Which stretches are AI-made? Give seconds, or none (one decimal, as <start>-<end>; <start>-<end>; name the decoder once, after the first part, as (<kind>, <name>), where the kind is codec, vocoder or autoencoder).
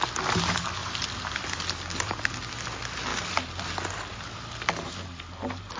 0.8-2.1 (vocoder, BigVGAN v2)